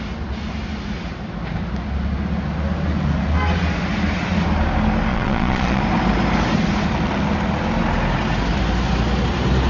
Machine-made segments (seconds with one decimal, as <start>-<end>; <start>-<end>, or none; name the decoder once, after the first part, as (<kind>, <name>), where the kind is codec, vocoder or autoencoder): 5.1-5.8 (vocoder, Vocos)